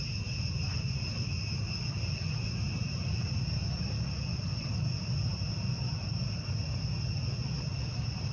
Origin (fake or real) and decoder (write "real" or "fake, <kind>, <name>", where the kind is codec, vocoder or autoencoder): real